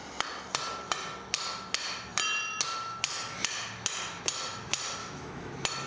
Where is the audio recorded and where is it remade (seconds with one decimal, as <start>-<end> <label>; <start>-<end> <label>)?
0.0-5.0 recorded; 5.0-5.5 remade; 5.5-5.9 recorded

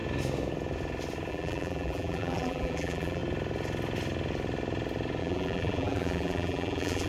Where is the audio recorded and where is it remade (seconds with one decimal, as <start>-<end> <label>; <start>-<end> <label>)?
0.0-1.3 recorded; 1.3-3.2 remade; 3.2-5.2 recorded; 5.2-7.1 remade

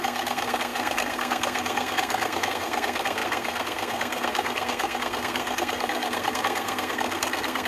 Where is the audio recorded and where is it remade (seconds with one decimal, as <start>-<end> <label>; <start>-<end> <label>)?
0.0-7.7 remade

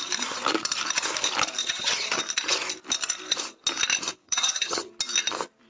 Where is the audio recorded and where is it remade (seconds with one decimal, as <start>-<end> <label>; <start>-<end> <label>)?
0.0-1.6 recorded; 1.6-2.2 remade; 2.2-4.2 recorded; 4.2-4.9 remade; 4.9-5.7 recorded

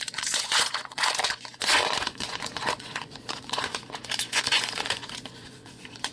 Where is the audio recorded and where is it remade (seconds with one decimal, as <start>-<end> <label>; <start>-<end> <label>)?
0.0-6.1 remade

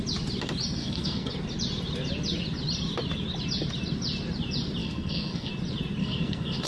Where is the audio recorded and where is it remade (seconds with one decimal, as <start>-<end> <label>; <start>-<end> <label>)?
0.0-0.8 recorded; 0.8-1.3 remade; 1.3-4.8 recorded; 4.8-5.5 remade; 5.5-6.0 recorded; 6.0-6.7 remade

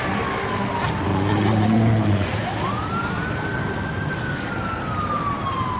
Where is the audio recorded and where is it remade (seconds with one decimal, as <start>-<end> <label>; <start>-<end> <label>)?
0.0-1.1 recorded; 1.1-2.3 remade; 2.3-5.8 recorded